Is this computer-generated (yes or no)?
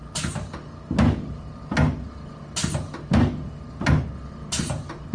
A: no